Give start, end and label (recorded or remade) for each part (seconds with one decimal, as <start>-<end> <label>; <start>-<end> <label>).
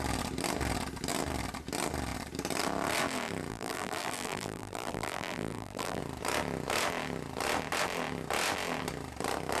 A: 0.0-3.5 recorded; 3.5-6.0 remade; 6.0-9.6 recorded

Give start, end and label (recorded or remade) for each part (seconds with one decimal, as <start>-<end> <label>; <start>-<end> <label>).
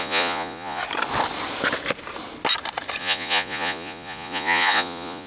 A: 0.0-0.8 remade; 0.8-3.0 recorded; 3.0-5.3 remade